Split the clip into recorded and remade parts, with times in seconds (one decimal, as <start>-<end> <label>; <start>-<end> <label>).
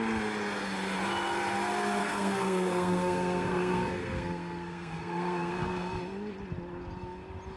0.0-2.0 recorded; 2.0-6.0 remade; 6.0-7.6 recorded